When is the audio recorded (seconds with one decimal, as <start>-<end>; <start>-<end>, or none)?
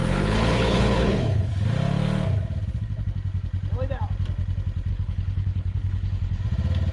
1.5-4.9; 6.4-6.9